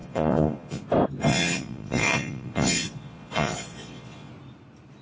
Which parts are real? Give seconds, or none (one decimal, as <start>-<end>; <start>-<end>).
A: 0.8-1.3; 4.3-5.0